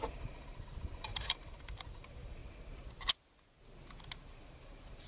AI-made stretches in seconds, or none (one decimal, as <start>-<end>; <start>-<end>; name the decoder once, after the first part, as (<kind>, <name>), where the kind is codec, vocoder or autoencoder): 0.0-2.4 (vocoder, BigVGAN v2); 4.3-5.1